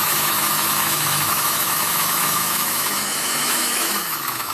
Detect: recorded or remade remade